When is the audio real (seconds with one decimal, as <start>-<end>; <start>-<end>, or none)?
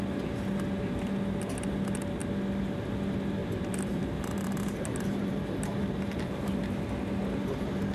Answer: 0.0-3.4; 6.5-7.9